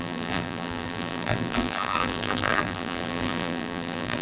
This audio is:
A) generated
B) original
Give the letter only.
A